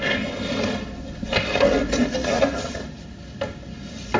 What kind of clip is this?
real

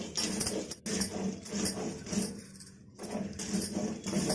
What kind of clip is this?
real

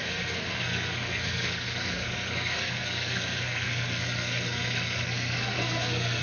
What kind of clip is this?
fake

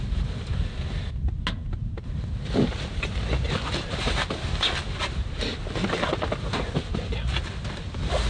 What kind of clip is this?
real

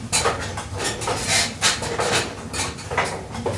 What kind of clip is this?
real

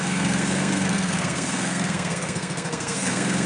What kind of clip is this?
fake